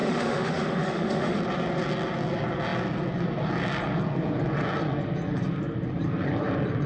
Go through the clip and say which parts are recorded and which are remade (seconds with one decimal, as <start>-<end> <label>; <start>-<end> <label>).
0.0-1.4 remade; 1.4-6.9 recorded